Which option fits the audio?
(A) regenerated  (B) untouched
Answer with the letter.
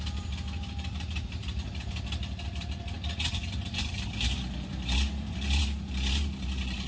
A